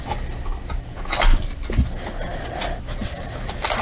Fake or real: real